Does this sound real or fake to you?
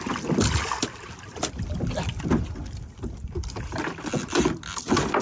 real